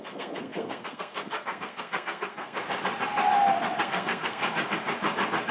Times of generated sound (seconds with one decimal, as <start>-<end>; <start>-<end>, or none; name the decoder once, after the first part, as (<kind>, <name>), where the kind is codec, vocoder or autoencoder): 0.0-2.6 (codec, SNAC); 3.8-4.4